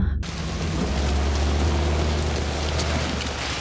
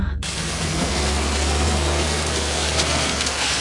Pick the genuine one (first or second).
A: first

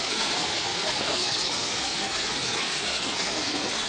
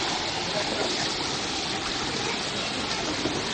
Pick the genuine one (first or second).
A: second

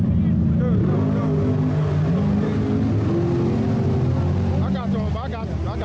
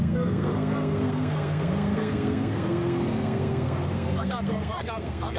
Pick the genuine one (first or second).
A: first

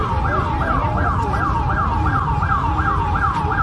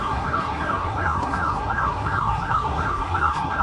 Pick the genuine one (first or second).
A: first